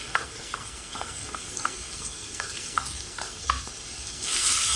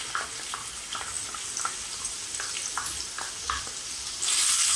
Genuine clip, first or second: second